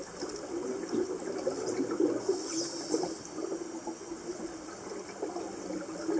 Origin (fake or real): real